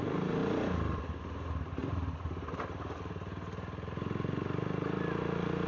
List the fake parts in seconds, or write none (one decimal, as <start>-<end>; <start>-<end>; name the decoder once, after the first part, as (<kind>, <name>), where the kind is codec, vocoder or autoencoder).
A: 0.4-1.0 (vocoder, BigVGAN v2)